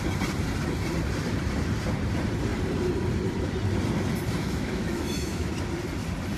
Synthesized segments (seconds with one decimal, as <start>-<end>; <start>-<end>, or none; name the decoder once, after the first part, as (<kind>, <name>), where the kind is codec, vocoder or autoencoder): 4.4-5.5 (autoencoder, DAC-VAE)